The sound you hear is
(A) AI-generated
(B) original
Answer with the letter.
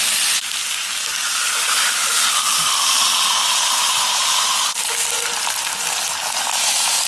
B